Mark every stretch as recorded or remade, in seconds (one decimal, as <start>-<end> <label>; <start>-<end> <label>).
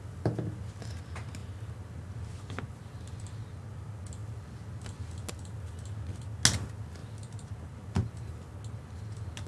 0.0-9.5 recorded